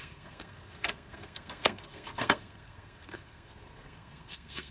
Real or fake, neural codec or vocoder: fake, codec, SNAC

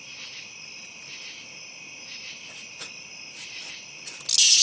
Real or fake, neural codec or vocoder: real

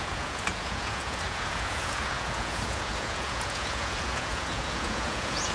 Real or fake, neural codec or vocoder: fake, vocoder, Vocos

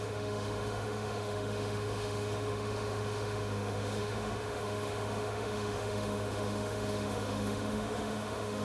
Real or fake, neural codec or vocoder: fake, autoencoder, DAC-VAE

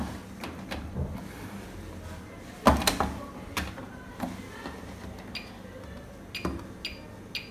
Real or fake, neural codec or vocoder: real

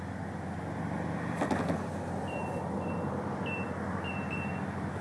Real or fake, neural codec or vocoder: real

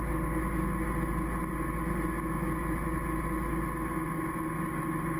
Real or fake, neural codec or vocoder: real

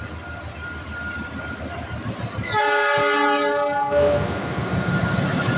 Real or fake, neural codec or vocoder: real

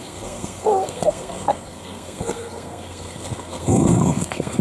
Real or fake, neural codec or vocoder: fake, codec, SNAC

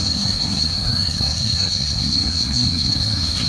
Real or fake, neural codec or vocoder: fake, codec, SNAC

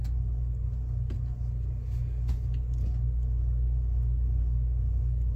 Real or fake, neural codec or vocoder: real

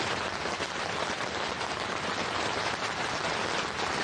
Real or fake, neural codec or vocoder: real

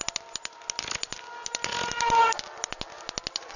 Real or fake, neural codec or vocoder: fake, vocoder, BigVGAN v2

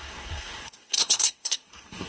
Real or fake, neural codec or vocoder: fake, codec, SNAC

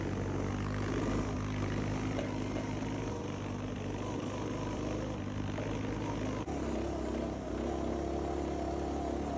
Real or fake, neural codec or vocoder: real